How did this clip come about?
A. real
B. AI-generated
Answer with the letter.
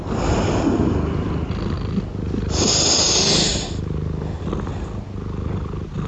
A